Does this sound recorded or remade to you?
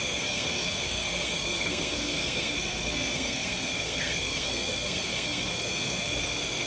remade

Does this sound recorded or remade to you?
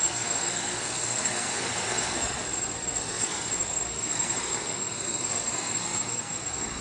remade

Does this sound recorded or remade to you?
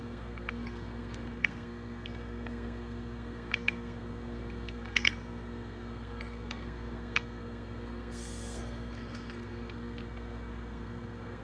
remade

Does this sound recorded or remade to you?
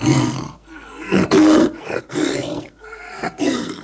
remade